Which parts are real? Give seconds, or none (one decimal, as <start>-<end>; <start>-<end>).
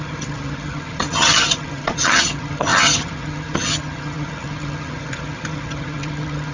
none